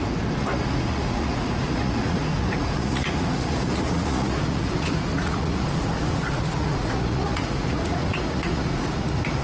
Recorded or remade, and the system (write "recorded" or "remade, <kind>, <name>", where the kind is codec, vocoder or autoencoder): remade, vocoder, Vocos